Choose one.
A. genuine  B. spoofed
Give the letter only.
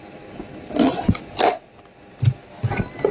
A